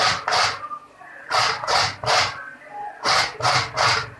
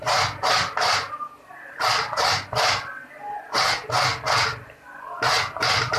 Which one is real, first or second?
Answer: second